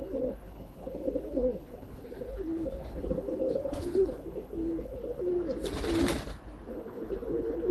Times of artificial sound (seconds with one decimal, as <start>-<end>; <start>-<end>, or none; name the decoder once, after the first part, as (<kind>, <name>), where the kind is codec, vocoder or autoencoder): 0.0-5.3 (codec, HILCodec); 6.7-7.7

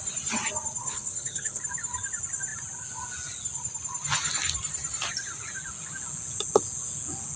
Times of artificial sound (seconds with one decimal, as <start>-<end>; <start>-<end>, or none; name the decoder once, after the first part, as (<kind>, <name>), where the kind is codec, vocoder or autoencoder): 0.8-1.6 (codec, HILCodec)

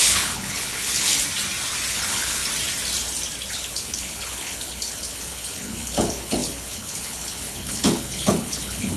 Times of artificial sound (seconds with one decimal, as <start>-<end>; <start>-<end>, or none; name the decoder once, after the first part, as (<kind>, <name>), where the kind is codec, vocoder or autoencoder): 0.0-1.1 (codec, HILCodec); 1.9-2.4; 3.5-9.0